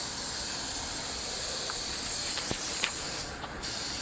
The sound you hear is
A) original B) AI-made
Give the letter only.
A